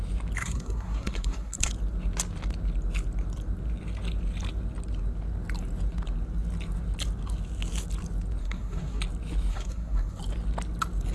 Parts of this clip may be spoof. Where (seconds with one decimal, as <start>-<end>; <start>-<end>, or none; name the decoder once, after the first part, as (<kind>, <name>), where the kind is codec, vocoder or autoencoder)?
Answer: 0.4-1.7 (codec, SNAC); 8.4-9.0; 9.5-10.2